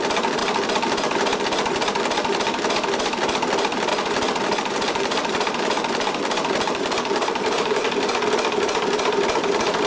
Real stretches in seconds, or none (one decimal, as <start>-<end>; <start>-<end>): 0.0-3.9; 7.8-9.4

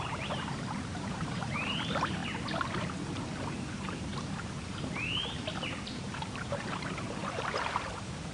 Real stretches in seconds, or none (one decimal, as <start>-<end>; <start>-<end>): 2.2-2.8; 4.1-5.8